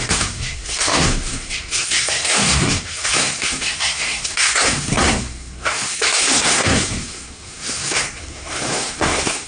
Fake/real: fake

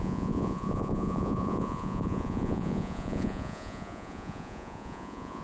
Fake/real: fake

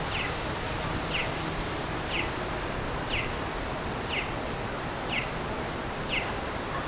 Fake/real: real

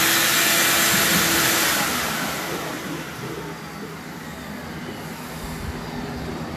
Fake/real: real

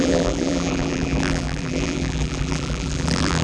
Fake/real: fake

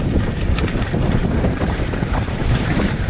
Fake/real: fake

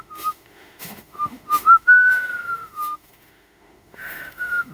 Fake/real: fake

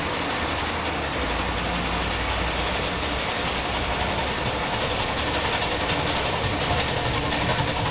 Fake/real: real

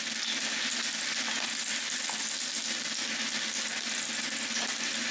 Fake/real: real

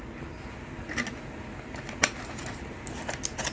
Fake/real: real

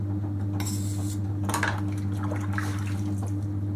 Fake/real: real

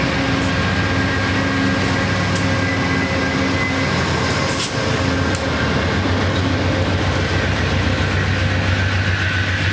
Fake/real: real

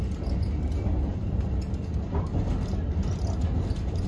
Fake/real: real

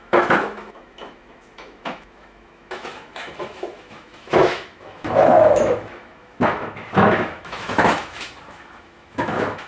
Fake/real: fake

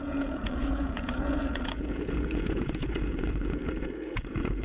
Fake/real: fake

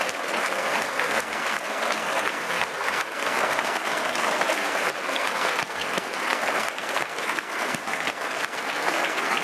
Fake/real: fake